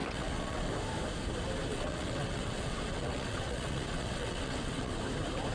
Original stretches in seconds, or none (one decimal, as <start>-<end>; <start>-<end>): 0.7-1.7; 5.0-5.5